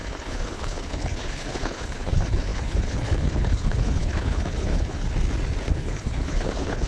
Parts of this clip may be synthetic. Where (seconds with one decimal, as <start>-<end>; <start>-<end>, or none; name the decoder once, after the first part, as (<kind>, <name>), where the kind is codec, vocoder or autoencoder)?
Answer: 0.0-5.0 (codec, HILCodec); 5.7-6.9